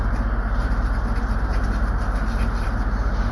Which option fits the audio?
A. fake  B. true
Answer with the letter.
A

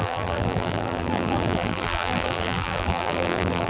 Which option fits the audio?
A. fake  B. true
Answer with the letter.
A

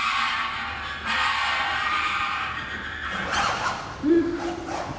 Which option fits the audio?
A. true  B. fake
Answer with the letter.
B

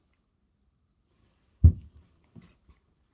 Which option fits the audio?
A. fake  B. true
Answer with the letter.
A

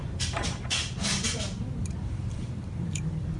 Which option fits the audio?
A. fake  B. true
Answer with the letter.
A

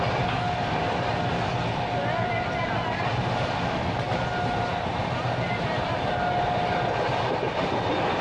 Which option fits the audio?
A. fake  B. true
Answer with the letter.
B